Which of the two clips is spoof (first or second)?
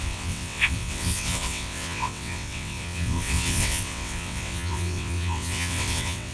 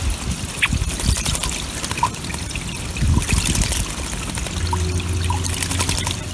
first